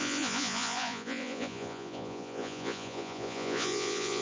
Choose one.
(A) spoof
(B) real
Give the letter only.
A